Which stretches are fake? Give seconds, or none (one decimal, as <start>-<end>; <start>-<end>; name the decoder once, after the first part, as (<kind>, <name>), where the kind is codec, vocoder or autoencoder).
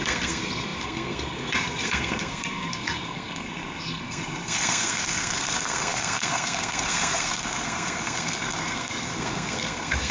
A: 0.0-10.1 (codec, SNAC)